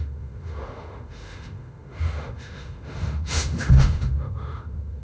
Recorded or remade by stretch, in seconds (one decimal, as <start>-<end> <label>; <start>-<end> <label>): 0.0-5.0 remade